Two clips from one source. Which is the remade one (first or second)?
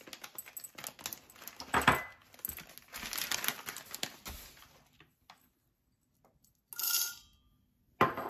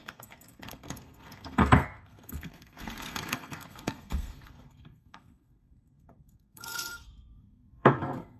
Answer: second